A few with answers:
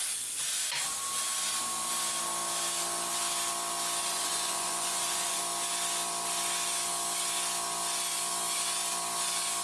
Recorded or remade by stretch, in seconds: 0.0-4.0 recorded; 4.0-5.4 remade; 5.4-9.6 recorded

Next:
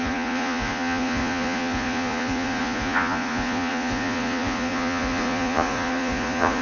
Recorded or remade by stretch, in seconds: 0.0-6.6 remade